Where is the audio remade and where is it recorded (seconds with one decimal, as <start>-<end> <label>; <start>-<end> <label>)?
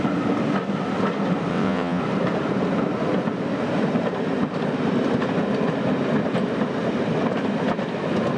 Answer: 0.0-1.5 recorded; 1.5-2.0 remade; 2.0-8.4 recorded